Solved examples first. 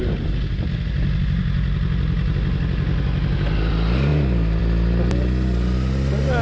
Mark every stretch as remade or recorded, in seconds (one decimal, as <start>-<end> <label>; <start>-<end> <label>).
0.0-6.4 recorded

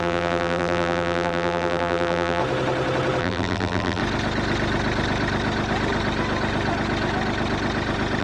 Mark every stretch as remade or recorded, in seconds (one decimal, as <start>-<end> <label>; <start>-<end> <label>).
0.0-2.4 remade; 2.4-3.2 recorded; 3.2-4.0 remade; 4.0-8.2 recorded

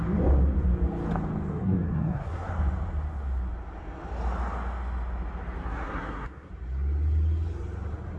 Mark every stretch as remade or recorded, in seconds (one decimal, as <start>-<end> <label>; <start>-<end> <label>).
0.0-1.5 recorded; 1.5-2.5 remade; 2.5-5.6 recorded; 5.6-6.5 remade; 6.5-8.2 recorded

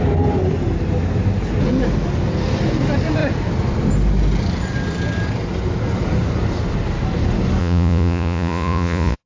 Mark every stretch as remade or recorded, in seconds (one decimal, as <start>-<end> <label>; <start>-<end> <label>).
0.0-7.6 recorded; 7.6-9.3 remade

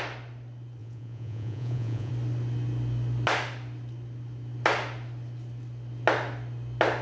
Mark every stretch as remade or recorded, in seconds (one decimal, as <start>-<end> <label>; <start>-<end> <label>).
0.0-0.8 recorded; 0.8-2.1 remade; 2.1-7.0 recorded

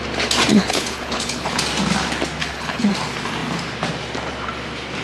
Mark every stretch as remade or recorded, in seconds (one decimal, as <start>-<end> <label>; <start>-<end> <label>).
0.0-0.5 recorded; 0.5-1.6 remade; 1.6-2.4 recorded; 2.4-2.9 remade; 2.9-5.0 recorded

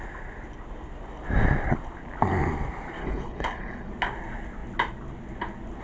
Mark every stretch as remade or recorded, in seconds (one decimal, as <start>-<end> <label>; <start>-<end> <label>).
0.0-3.0 recorded; 3.0-3.9 remade; 3.9-5.8 recorded

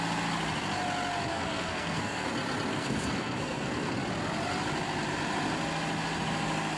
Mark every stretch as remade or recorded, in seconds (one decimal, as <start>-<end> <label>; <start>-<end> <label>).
0.0-1.3 recorded; 1.3-2.3 remade; 2.3-2.7 recorded; 2.7-3.9 remade; 3.9-6.8 recorded